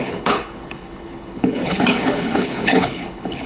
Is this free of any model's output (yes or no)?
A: no